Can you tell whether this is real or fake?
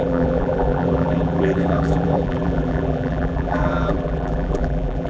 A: fake